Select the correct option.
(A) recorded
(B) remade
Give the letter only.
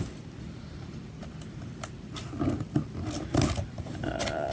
B